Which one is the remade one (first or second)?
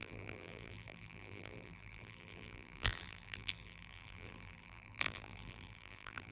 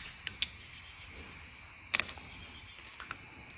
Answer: first